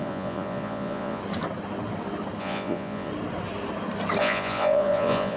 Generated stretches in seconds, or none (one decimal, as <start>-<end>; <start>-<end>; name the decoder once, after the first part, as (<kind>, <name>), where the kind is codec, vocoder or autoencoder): 0.0-1.2 (vocoder, Vocos); 2.4-3.1; 4.2-5.4